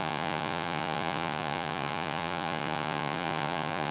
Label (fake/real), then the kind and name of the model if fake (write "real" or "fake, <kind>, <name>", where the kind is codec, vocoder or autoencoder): fake, vocoder, Vocos